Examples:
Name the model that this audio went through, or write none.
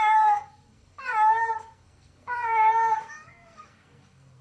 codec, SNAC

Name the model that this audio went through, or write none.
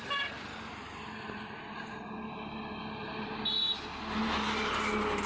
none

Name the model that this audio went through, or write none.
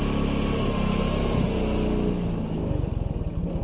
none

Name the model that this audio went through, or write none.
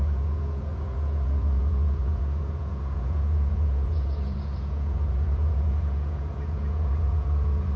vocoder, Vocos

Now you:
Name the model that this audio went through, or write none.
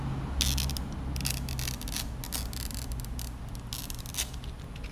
none